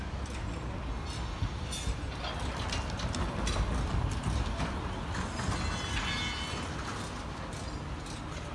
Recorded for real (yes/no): yes